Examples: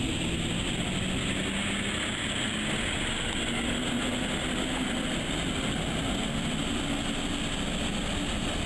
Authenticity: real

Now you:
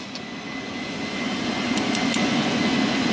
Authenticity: fake